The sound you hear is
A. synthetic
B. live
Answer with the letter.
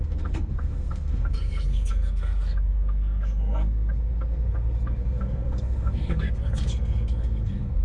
A